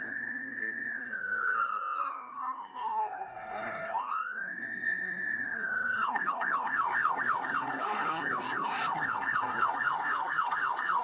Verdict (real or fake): fake